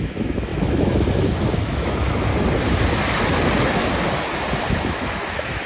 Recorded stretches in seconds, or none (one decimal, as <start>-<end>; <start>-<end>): 2.3-4.8